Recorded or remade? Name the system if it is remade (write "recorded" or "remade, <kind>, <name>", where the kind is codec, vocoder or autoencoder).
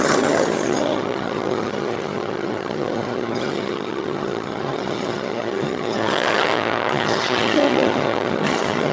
remade, vocoder, HiFi-GAN